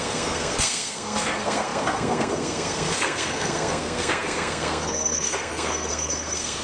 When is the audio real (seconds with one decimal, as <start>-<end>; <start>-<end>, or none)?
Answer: none